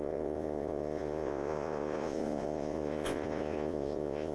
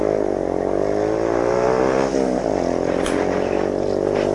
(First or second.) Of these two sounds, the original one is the second